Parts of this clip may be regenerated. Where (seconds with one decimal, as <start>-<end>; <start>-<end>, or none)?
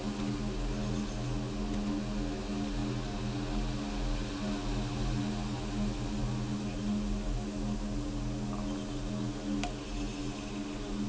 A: none